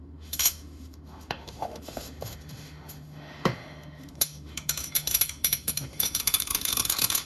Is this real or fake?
fake